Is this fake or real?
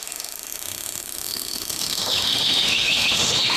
fake